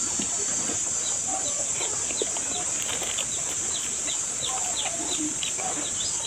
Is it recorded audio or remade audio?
recorded